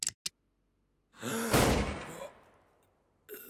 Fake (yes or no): no